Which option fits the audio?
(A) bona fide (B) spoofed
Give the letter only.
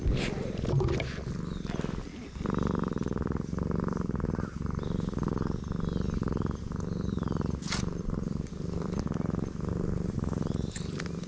A